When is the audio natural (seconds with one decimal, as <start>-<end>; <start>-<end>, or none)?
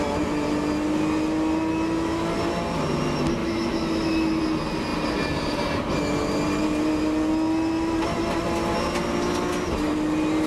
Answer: 0.0-3.4; 4.4-10.5